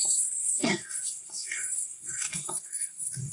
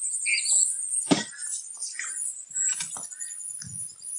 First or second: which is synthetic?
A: first